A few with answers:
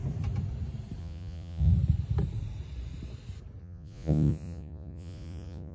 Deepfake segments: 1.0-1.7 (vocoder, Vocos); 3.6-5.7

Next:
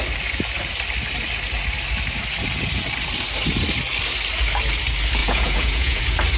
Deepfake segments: 5.2-6.0 (vocoder, Vocos)

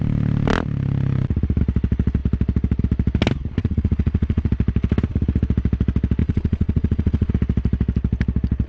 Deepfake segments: 3.6-4.5 (vocoder, Vocos); 6.2-7.3